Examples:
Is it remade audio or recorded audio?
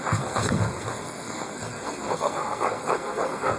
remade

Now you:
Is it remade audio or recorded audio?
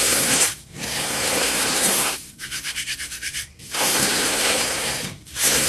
remade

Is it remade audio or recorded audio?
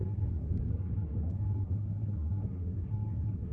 remade